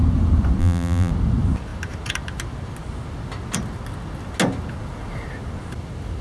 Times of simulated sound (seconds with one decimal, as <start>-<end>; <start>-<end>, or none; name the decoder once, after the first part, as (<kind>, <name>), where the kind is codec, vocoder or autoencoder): 0.6-1.1 (vocoder, BigVGAN v2)